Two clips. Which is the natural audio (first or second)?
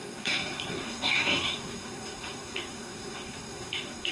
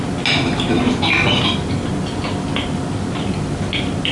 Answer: second